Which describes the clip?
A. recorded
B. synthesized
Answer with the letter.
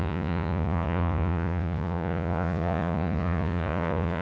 B